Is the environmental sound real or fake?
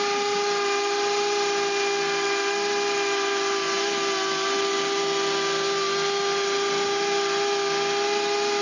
real